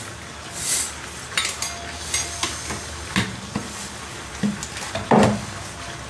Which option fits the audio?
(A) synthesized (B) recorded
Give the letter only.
B